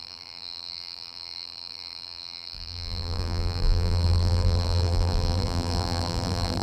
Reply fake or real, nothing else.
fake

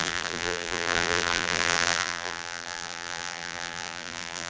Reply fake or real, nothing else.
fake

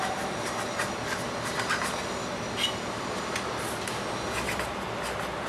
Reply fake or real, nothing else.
real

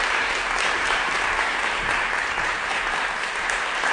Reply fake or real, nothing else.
fake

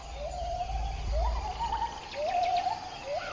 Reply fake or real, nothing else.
real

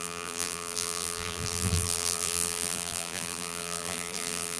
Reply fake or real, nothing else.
fake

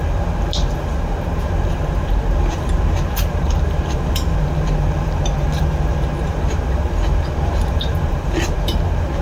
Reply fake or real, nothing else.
fake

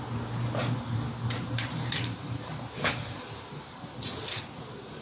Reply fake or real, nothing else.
fake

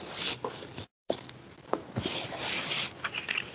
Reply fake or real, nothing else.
fake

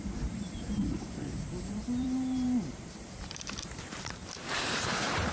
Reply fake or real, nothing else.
fake